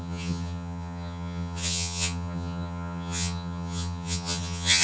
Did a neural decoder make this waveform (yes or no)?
yes